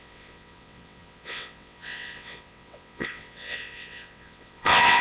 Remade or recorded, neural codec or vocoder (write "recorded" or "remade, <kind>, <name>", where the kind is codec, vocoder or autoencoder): remade, vocoder, WaveNeXt